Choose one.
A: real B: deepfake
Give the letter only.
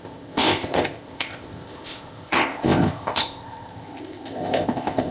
B